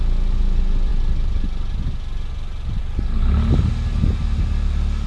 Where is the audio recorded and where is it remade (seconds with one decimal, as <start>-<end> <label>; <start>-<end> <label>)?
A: 0.0-5.1 recorded